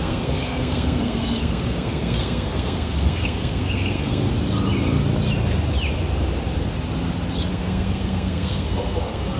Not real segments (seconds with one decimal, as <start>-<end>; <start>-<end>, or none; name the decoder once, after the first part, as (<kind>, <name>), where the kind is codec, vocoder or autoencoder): 0.0-4.3 (codec, SNAC); 7.5-9.4